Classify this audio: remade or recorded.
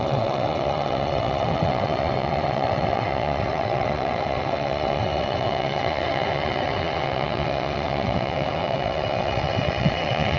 remade